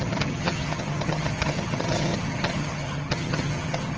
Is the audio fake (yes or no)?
yes